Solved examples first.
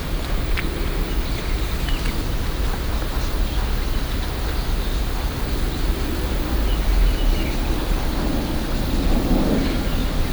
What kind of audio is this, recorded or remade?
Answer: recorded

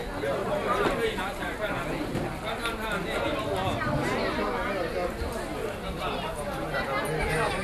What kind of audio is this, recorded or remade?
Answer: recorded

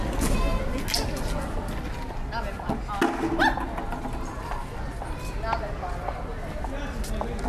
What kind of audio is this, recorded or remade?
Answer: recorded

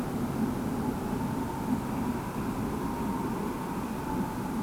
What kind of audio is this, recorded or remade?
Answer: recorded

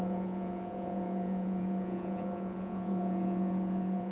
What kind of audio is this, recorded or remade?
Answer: remade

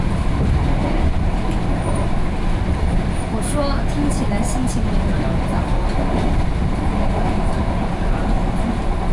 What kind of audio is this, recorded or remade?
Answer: recorded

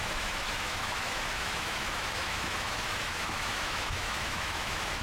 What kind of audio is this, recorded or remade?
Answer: remade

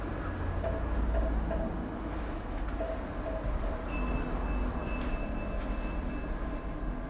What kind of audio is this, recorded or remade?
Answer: recorded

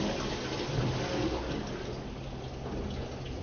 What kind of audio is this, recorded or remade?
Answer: recorded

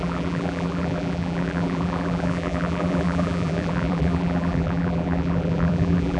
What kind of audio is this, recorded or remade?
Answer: remade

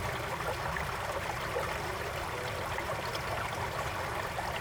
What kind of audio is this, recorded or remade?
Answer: recorded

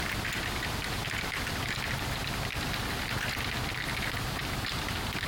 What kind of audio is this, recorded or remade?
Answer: recorded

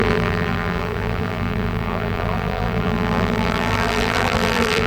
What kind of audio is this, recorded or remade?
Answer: remade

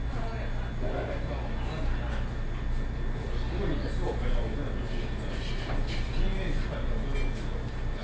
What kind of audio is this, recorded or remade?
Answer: recorded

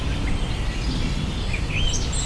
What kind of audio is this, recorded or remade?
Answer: recorded